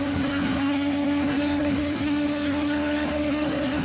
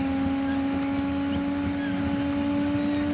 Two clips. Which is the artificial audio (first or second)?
first